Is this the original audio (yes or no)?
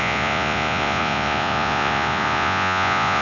no